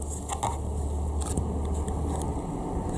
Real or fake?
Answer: real